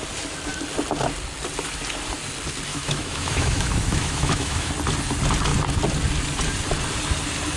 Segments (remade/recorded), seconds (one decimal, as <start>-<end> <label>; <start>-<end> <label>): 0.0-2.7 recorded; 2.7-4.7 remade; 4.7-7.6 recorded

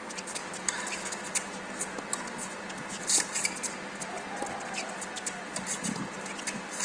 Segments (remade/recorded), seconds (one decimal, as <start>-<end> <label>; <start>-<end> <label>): 0.0-6.8 recorded

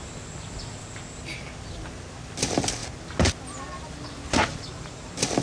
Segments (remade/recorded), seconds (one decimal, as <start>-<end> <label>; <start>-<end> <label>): 0.0-5.4 recorded

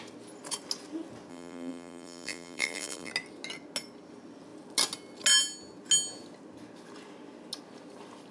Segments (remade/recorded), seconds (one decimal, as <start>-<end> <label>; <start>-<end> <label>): 0.0-1.3 recorded; 1.3-3.1 remade; 3.1-8.3 recorded

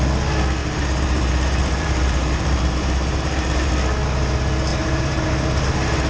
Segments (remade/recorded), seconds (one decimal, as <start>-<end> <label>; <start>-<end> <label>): 0.0-0.6 recorded; 0.6-3.7 remade; 3.7-4.7 recorded; 4.7-5.3 remade; 5.3-6.1 recorded

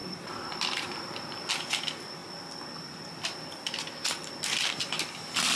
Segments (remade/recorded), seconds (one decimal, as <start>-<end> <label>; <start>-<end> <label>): 0.0-1.5 remade; 1.5-2.2 recorded; 2.2-3.0 remade; 3.0-5.6 recorded